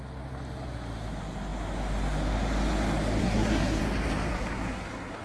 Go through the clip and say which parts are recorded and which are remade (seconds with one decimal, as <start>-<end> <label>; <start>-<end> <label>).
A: 0.0-3.2 recorded; 3.2-3.8 remade; 3.8-4.3 recorded; 4.3-5.2 remade